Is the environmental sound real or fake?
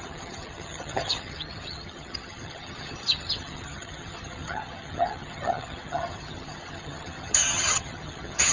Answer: fake